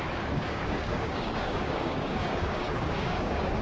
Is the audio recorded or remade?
remade